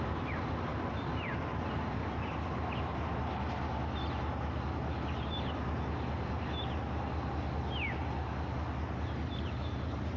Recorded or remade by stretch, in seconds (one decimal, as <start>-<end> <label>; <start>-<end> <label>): 0.0-0.7 recorded; 0.7-1.4 remade; 1.4-10.2 recorded